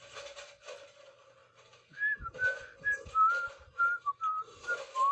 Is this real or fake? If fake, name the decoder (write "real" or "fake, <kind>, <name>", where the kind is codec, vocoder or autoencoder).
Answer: real